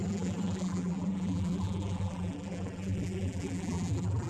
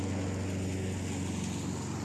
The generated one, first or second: first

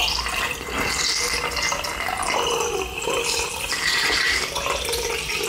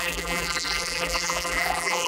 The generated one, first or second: second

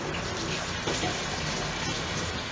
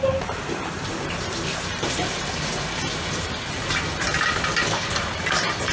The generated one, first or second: second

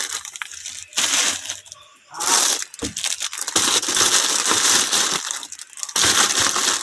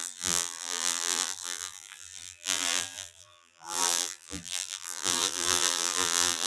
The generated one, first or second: second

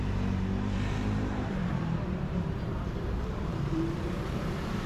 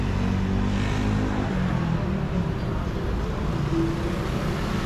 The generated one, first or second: first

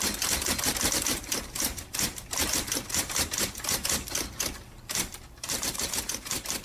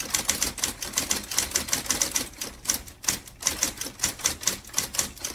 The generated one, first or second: first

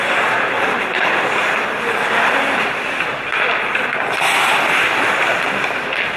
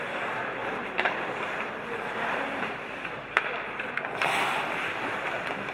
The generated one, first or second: second